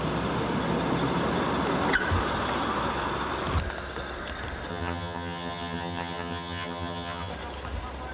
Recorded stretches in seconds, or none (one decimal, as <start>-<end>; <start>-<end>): 0.0-4.7; 7.3-8.1